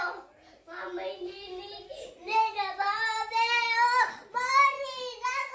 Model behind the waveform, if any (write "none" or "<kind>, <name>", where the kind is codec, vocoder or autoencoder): none